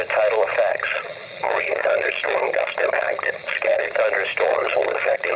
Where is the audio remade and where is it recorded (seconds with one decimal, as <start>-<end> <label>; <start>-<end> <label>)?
0.0-0.7 recorded; 0.7-3.9 remade; 3.9-4.5 recorded; 4.5-5.4 remade